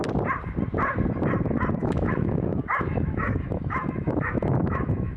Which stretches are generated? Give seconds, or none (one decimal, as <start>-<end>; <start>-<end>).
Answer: 1.8-5.2